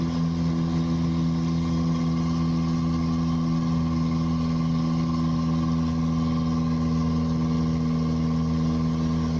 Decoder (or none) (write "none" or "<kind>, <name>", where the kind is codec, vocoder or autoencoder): none